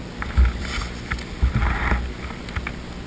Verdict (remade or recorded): recorded